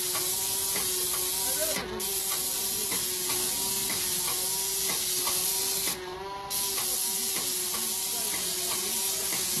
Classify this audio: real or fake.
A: real